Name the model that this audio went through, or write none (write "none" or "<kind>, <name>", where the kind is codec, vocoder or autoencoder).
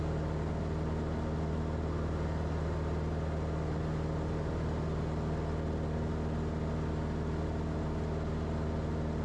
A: none